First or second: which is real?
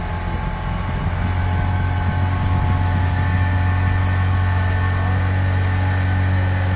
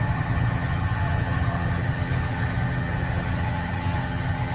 first